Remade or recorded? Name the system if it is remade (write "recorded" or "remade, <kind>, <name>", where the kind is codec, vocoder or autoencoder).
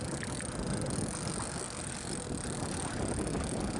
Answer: recorded